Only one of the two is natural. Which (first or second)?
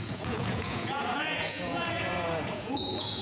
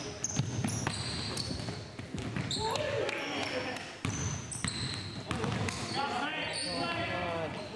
second